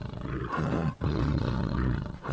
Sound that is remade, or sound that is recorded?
remade